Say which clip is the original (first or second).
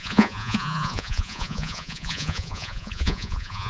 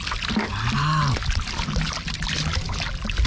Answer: second